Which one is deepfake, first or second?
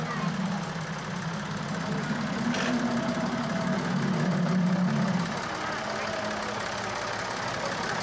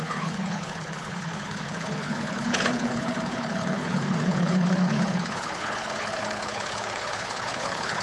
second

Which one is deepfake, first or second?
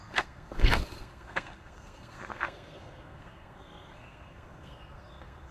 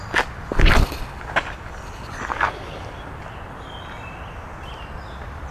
first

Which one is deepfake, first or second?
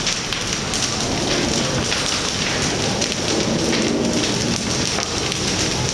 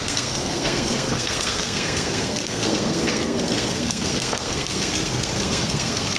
second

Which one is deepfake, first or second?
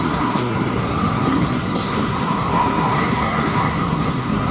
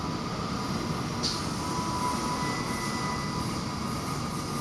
first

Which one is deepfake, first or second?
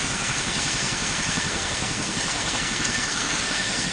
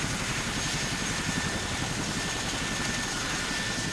first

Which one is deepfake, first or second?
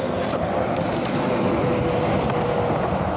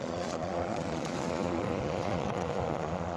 second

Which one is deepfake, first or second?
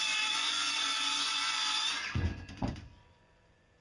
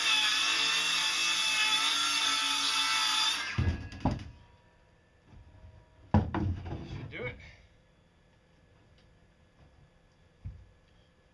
first